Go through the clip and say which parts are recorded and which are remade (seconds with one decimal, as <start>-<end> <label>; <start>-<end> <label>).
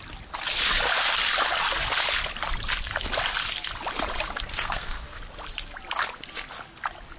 0.0-4.5 recorded; 4.5-5.2 remade; 5.2-7.2 recorded